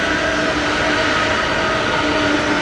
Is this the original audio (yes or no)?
yes